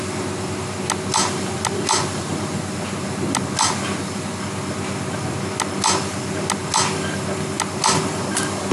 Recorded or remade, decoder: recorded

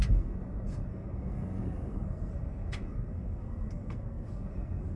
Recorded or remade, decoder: remade, codec, SNAC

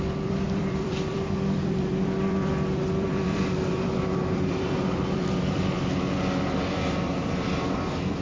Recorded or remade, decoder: remade, vocoder, BigVGAN v2